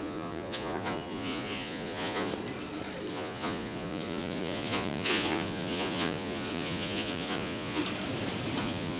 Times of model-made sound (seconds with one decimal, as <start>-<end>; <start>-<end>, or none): 0.0-2.3; 3.1-7.8; 8.6-9.0